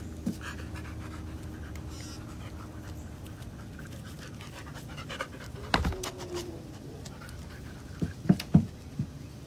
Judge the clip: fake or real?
real